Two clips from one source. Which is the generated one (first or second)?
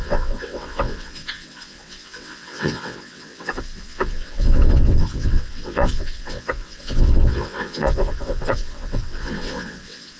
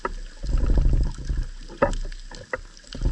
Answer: first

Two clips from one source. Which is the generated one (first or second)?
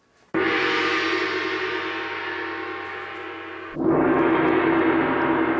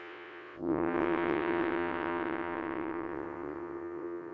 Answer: second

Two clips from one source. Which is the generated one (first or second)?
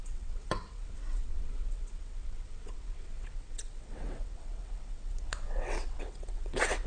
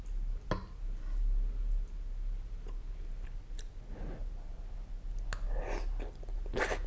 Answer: first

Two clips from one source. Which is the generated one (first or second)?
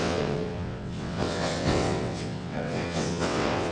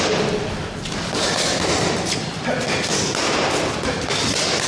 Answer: first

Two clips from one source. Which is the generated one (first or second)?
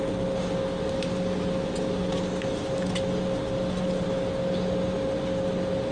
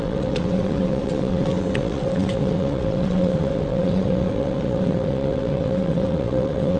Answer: second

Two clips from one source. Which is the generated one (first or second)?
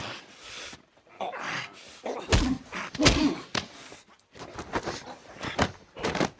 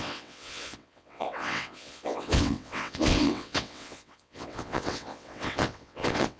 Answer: second